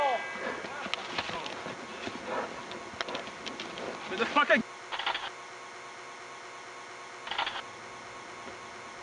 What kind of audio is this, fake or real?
real